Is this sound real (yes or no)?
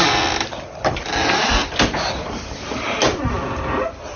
yes